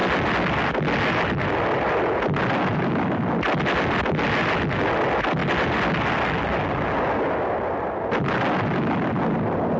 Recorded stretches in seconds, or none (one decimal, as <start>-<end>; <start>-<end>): 0.0-9.8